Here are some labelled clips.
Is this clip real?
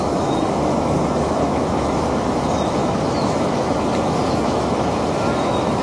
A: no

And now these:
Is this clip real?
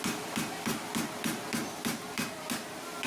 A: yes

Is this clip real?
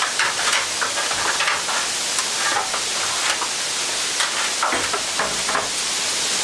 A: yes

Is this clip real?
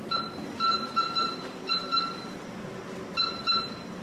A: yes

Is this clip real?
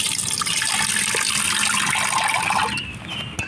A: yes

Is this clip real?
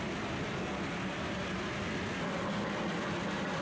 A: yes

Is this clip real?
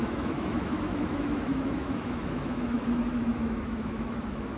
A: no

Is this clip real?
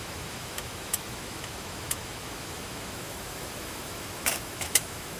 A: no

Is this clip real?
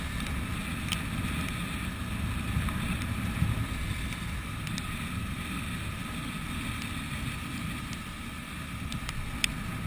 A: yes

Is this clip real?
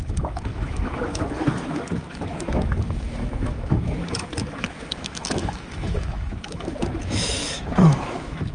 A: no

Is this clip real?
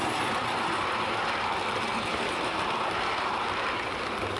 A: yes